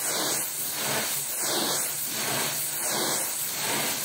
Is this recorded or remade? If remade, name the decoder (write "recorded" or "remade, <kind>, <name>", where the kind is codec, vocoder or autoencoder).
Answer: recorded